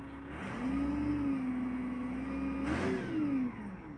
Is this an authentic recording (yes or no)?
yes